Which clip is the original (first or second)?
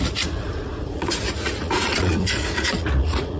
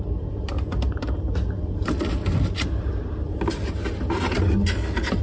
second